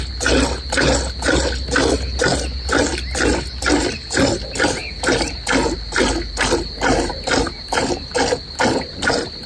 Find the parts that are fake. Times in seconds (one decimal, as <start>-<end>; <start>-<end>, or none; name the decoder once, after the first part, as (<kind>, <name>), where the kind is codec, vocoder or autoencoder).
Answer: none